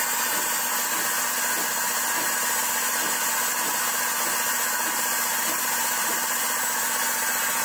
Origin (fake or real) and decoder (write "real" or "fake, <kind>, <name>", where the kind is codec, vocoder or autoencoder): real